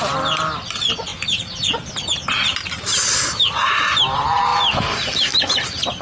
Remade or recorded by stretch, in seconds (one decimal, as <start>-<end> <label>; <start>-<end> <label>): 0.0-6.0 recorded